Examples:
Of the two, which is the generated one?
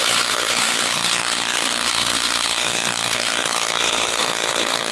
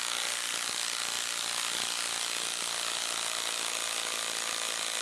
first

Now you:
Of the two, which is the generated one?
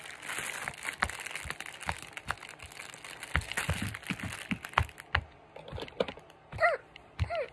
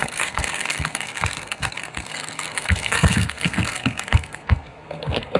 second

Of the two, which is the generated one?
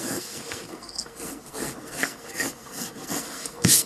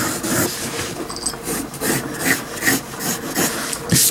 first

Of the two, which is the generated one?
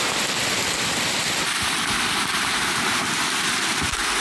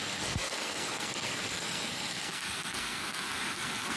second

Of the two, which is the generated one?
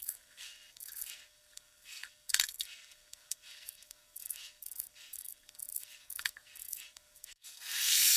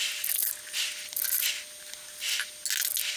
first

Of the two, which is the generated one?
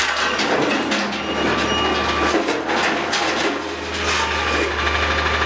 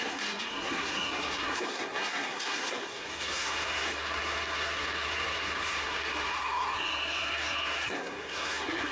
second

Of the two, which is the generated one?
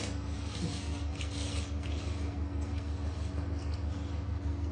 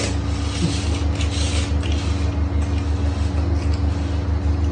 first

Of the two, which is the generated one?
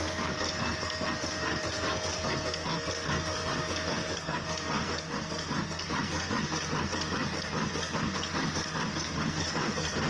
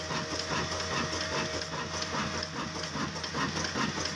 first